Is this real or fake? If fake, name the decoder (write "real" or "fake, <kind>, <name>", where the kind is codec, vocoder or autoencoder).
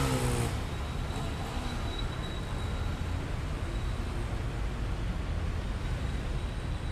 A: real